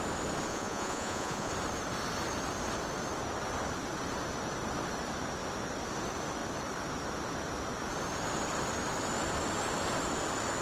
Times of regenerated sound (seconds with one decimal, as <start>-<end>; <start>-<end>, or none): 0.5-1.5